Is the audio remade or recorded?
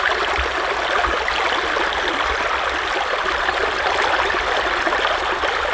recorded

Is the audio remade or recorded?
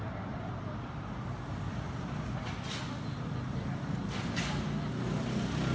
recorded